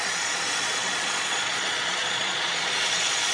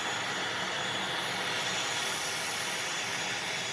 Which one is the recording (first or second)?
second